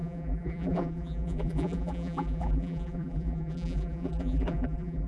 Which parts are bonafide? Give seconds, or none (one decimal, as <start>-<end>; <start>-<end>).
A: none